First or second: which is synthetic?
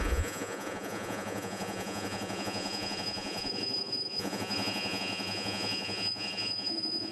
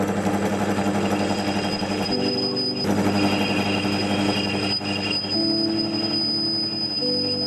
first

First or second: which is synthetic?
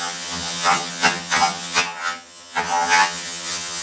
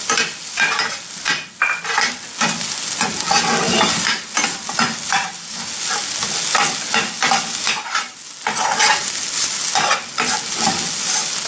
first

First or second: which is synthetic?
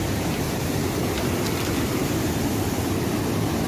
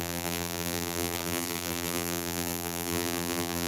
second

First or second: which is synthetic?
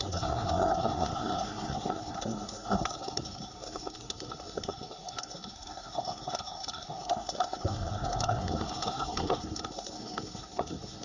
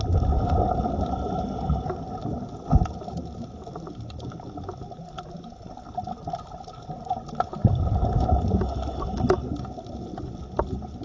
first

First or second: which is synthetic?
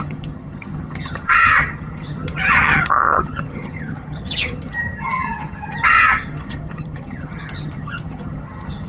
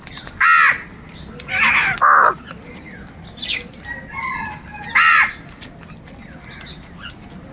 first